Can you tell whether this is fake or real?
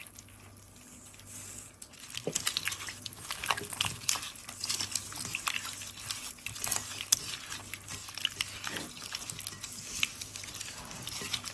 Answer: real